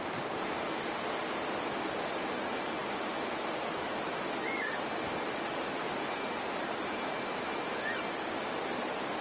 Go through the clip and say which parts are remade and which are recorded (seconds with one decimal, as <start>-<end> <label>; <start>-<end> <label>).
0.0-9.2 recorded